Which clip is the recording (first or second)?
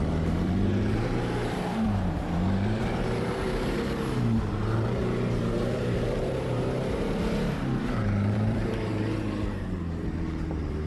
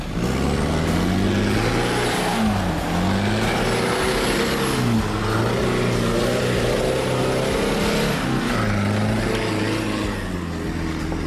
second